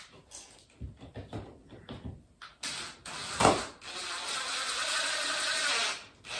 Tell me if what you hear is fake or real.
real